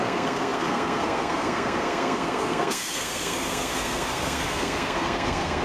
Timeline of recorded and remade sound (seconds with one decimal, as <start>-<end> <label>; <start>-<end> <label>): 0.0-5.6 remade